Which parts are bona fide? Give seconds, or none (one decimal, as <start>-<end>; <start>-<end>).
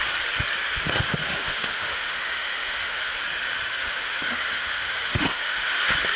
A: 0.0-1.2; 3.2-3.7; 5.7-6.2